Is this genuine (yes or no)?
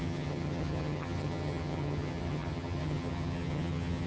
no